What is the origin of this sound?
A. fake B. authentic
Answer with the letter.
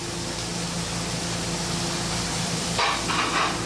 B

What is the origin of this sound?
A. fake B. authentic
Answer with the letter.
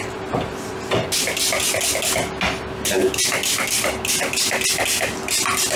B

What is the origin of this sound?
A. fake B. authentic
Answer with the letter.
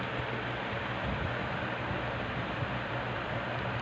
A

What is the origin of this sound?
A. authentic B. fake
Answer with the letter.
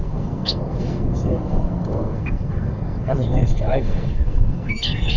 B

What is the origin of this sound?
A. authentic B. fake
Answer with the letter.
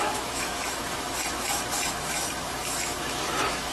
B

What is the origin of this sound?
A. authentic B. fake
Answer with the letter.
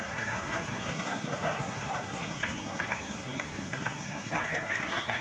B